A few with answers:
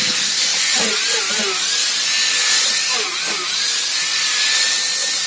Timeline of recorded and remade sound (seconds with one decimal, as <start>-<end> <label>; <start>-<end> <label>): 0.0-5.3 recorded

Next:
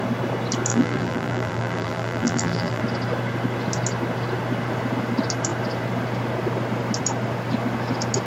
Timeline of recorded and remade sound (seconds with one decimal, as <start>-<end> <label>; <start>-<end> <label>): 0.0-0.7 recorded; 0.7-2.8 remade; 2.8-8.3 recorded

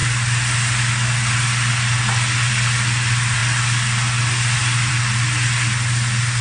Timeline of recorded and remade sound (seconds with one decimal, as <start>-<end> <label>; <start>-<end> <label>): 0.0-6.4 recorded

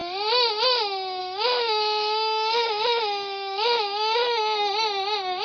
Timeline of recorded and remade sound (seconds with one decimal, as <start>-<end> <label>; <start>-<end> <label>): 0.0-1.2 recorded; 1.2-4.4 remade; 4.4-5.4 recorded